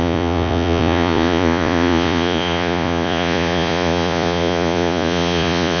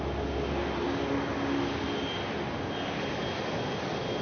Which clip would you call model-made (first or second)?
first